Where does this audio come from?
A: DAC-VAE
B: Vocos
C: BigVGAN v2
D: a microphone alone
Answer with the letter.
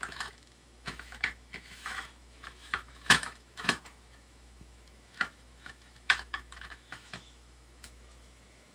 A